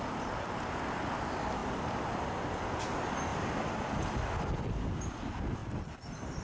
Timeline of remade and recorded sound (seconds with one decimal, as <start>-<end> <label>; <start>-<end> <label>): 0.0-1.6 recorded; 1.6-2.1 remade; 2.1-5.6 recorded; 5.6-6.4 remade